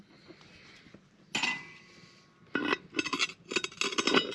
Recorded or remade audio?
recorded